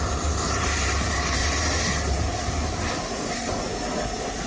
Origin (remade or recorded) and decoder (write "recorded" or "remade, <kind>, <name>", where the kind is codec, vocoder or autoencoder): recorded